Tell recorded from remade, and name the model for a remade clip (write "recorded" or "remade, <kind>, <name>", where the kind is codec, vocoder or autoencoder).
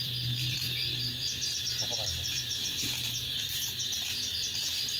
remade, vocoder, BigVGAN v2